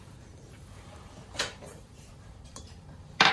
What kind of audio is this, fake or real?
fake